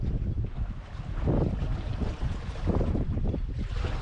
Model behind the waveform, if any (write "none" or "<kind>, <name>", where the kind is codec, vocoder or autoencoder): none